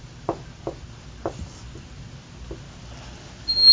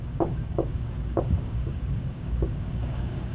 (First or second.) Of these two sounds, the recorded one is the first